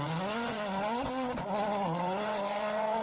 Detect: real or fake fake